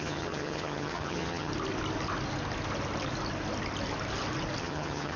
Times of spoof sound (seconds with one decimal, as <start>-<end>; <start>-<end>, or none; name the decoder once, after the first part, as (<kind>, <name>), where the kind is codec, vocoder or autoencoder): 0.0-1.5 (vocoder, HiFi-GAN); 4.6-5.2